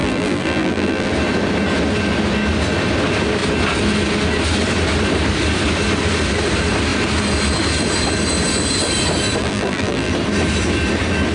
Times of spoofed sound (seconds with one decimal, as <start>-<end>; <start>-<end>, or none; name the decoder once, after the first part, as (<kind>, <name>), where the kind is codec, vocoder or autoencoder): 0.0-1.1 (vocoder, BigVGAN v2); 9.4-10.1